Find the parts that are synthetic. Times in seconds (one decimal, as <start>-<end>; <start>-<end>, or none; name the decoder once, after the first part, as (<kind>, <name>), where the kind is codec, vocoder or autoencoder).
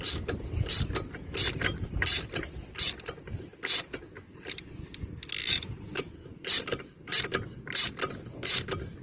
5.4-7.2 (vocoder, BigVGAN v2)